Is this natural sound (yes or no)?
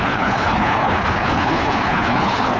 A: no